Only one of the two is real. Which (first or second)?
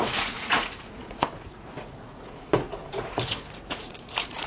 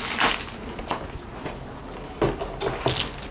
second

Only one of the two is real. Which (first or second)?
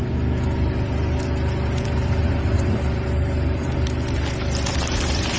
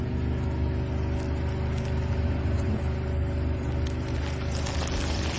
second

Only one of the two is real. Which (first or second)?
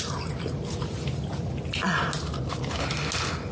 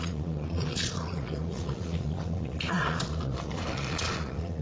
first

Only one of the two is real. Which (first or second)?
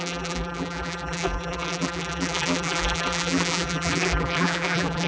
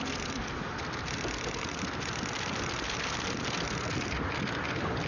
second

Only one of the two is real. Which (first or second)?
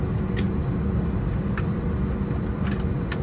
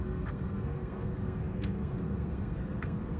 first